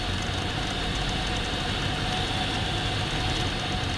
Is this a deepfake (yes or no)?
no